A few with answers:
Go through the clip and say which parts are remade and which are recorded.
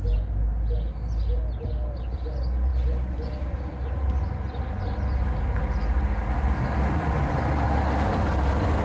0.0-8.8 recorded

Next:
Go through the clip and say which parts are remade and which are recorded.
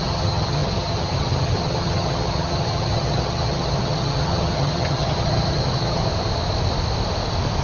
0.0-6.0 remade; 6.0-7.6 recorded